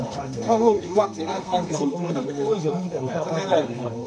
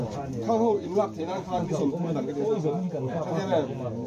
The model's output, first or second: first